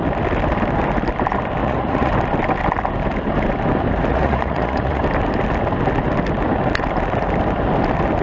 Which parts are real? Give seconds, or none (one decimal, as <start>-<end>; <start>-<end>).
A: 0.0-1.6; 2.1-4.1; 5.0-8.2